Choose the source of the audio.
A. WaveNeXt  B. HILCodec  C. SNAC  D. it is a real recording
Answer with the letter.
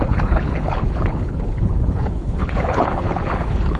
B